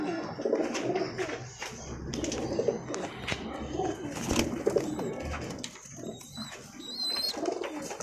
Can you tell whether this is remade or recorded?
recorded